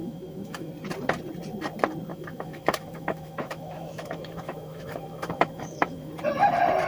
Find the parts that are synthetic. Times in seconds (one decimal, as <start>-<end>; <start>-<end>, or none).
0.0-0.7; 2.1-6.1